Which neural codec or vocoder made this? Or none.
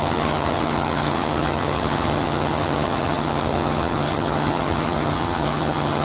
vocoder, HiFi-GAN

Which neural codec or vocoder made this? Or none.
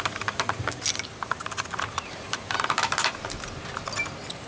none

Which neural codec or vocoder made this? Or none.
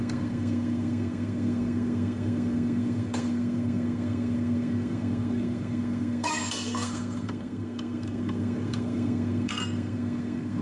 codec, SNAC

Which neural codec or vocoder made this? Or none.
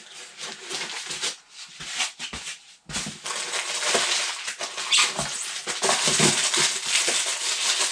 none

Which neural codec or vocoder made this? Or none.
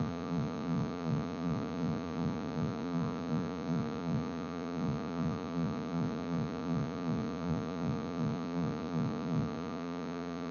vocoder, Vocos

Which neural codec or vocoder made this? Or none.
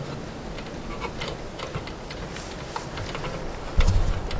none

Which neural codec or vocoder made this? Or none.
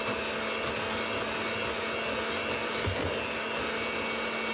none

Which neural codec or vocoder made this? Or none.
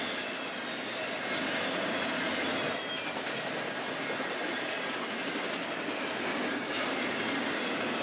none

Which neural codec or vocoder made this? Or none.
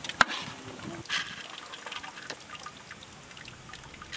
none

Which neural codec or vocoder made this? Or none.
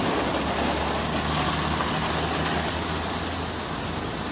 none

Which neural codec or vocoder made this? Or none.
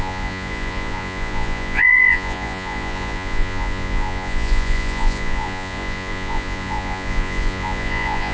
vocoder, Vocos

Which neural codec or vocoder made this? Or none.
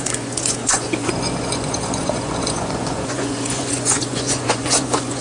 vocoder, Vocos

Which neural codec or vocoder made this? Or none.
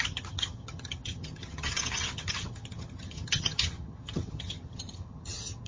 vocoder, HiFi-GAN